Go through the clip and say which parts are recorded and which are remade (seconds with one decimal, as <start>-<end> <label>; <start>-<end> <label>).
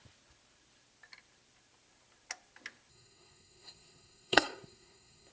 0.0-2.9 recorded; 2.9-5.3 remade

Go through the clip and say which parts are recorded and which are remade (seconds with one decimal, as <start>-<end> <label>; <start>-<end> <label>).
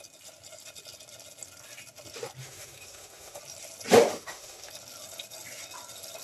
0.0-2.4 recorded; 2.4-3.4 remade; 3.4-4.1 recorded; 4.1-4.7 remade; 4.7-6.2 recorded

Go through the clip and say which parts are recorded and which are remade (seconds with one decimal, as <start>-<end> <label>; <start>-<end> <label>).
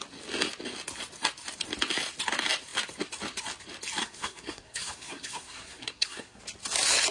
0.0-4.0 recorded; 4.0-6.4 remade; 6.4-7.1 recorded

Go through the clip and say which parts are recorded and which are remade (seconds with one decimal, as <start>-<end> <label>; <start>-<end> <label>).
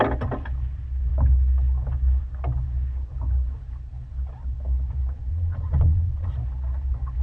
0.0-5.3 recorded; 5.3-6.3 remade; 6.3-7.2 recorded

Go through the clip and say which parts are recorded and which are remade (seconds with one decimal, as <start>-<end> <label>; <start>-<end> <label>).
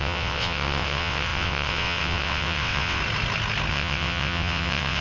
0.0-3.0 remade; 3.0-3.7 recorded; 3.7-5.0 remade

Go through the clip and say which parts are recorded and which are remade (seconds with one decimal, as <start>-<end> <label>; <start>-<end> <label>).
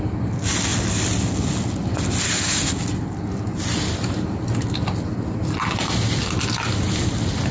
0.0-7.5 recorded